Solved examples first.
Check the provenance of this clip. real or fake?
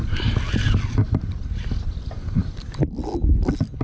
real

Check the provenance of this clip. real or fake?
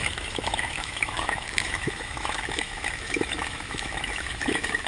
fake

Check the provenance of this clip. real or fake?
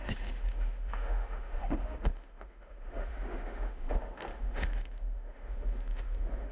fake